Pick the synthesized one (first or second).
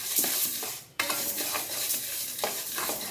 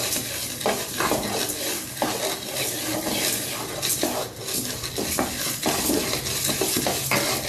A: first